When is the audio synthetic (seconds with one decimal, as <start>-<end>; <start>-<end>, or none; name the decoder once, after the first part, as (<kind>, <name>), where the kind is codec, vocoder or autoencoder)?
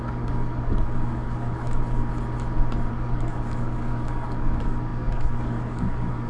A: 0.0-2.1 (codec, DAC); 2.9-6.3